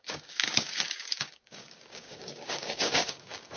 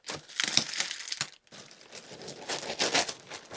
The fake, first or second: first